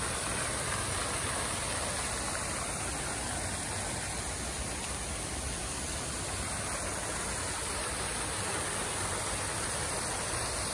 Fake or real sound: real